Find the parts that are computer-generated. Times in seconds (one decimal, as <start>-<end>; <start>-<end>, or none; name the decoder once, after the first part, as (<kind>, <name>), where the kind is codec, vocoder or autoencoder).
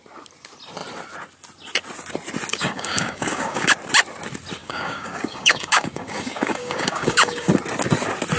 2.5-3.7 (codec, DAC); 4.6-7.5